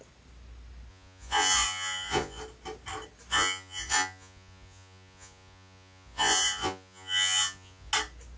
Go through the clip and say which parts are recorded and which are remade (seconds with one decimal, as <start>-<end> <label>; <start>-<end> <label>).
0.0-0.9 recorded; 0.9-2.4 remade; 2.4-3.3 recorded; 3.3-7.9 remade; 7.9-8.4 recorded